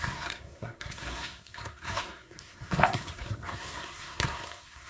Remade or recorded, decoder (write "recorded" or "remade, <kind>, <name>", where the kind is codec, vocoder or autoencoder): remade, codec, SNAC